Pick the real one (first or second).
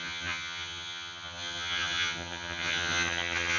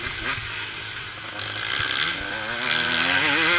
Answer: second